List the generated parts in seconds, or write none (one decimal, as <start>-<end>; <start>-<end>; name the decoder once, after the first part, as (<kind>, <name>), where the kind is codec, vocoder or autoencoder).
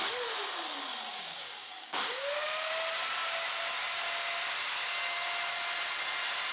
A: 1.1-2.7 (codec, DAC)